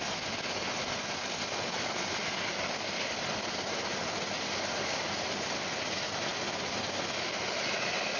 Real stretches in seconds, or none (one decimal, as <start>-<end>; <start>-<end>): 0.0-8.2